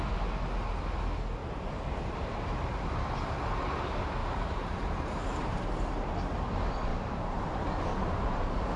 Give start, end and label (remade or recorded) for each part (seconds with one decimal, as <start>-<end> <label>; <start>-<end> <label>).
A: 0.0-1.4 recorded; 1.4-2.8 remade; 2.8-4.2 recorded; 4.2-6.1 remade; 6.1-6.9 recorded; 6.9-7.5 remade; 7.5-7.9 recorded; 7.9-8.8 remade